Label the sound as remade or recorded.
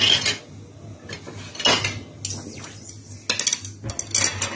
recorded